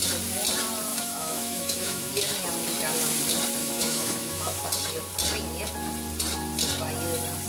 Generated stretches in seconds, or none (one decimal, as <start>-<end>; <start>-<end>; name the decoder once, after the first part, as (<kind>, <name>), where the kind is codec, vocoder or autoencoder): 0.9-2.1 (autoencoder, DAC-VAE); 3.6-4.6

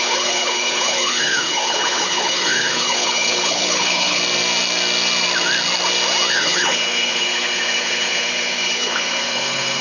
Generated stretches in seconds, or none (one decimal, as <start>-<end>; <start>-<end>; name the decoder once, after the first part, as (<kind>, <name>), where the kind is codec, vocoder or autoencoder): 0.0-4.2 (codec, HILCodec); 6.3-9.8

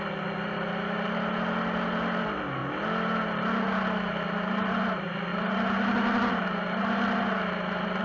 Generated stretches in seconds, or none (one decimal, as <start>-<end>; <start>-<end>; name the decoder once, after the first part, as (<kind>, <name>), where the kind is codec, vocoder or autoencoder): none